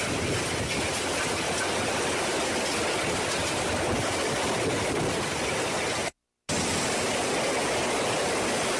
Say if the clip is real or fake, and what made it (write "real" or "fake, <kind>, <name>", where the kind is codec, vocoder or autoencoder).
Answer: real